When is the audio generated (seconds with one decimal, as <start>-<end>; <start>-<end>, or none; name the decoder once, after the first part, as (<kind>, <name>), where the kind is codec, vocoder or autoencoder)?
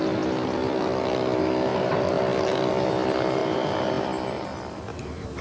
none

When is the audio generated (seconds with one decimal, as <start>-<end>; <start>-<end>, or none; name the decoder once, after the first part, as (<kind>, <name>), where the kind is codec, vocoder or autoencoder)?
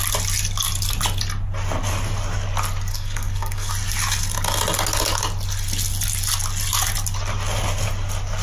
2.9-3.7 (codec, SNAC)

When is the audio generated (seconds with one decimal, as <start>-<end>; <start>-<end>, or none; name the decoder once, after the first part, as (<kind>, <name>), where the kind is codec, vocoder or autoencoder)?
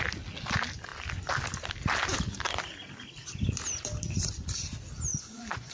5.1-5.7 (vocoder, Vocos)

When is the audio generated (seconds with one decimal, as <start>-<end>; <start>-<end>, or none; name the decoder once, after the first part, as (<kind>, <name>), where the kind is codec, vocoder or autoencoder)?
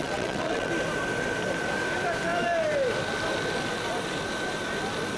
0.0-0.7 (vocoder, WaveNeXt)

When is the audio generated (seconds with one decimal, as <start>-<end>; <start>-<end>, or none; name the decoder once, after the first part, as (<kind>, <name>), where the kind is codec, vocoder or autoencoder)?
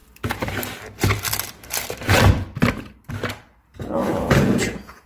4.0-5.1 (vocoder, Vocos)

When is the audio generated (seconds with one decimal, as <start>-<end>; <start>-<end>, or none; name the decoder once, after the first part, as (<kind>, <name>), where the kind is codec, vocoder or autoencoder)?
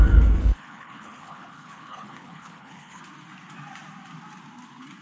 0.4-3.0 (codec, HILCodec)